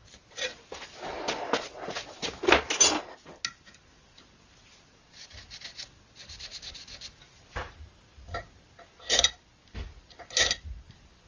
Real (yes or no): yes